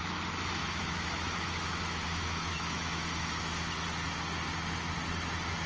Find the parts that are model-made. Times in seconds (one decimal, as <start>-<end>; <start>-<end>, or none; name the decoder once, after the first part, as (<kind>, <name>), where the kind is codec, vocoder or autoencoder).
0.6-3.4 (autoencoder, DAC-VAE)